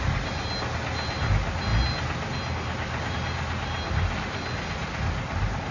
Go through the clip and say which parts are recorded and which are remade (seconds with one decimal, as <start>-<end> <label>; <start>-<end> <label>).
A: 0.0-5.7 recorded